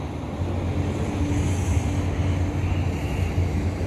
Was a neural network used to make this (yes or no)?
no